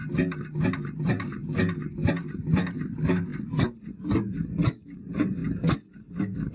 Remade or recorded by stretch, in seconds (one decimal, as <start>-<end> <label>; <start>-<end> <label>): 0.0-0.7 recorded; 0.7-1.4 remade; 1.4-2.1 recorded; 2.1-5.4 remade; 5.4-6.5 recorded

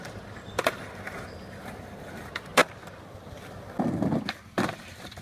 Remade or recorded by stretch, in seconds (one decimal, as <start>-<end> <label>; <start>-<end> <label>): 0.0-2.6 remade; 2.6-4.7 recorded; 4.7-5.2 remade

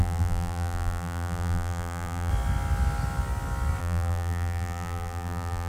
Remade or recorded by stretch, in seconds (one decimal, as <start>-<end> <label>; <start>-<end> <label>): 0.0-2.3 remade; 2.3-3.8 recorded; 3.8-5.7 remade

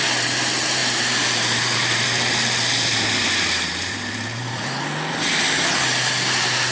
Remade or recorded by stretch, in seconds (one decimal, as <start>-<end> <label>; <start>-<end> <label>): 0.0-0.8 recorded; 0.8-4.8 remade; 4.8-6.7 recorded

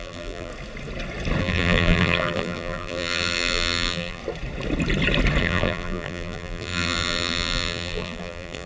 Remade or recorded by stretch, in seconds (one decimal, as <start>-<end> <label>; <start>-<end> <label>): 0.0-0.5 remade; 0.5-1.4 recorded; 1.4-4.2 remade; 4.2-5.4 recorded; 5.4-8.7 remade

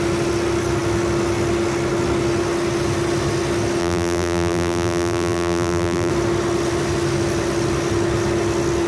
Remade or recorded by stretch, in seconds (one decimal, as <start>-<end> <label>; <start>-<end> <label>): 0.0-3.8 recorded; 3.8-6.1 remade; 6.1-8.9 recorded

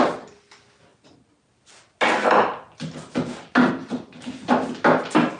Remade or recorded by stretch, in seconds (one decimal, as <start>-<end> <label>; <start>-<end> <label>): 0.0-5.4 recorded

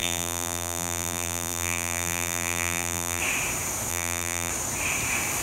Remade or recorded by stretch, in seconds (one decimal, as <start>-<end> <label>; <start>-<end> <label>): 0.0-3.2 remade; 3.2-3.9 recorded; 3.9-4.5 remade; 4.5-5.4 recorded